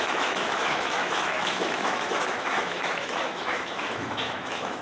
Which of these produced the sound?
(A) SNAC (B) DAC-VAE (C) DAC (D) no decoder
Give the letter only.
B